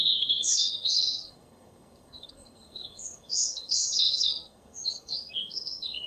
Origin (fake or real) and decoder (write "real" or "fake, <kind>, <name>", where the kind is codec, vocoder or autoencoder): fake, codec, SNAC